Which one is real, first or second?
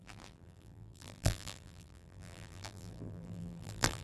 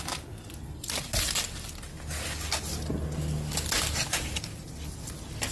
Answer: second